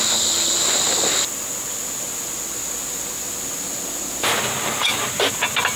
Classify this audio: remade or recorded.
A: recorded